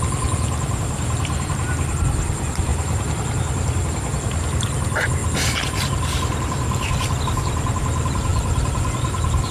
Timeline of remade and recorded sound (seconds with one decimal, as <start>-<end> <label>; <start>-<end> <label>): 0.0-2.7 recorded; 2.7-3.8 remade; 3.8-9.5 recorded